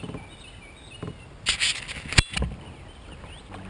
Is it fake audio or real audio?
real